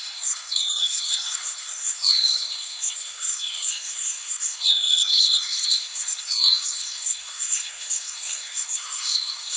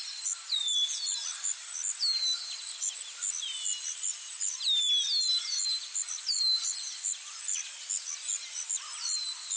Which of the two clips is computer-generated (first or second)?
first